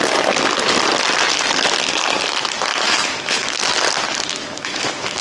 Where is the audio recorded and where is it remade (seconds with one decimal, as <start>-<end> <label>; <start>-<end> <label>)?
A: 0.0-2.7 recorded; 2.7-3.6 remade; 3.6-4.3 recorded; 4.3-5.2 remade